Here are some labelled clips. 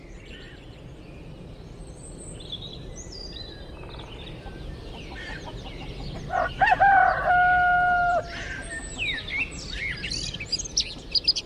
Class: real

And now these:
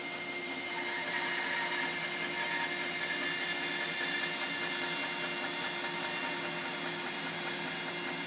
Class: real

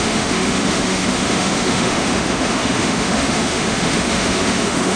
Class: fake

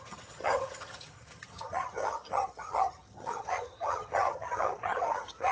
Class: fake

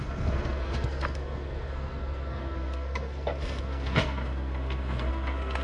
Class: fake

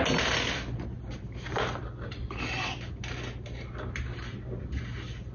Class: real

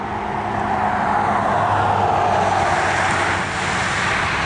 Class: real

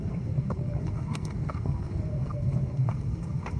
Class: fake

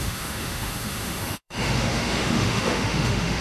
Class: fake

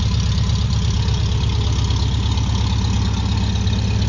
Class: real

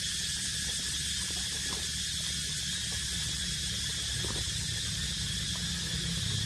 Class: real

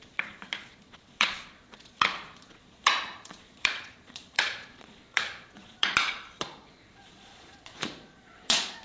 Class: fake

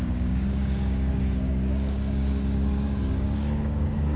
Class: fake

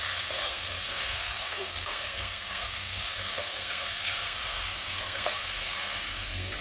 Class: fake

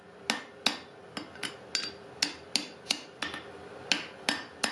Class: real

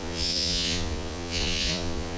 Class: fake